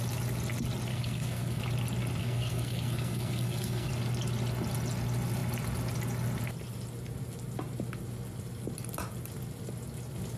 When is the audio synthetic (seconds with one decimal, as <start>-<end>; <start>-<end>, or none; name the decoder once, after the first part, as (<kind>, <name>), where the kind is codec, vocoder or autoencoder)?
0.9-1.6 (codec, SNAC); 2.2-3.9